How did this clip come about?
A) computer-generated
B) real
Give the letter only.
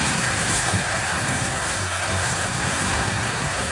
A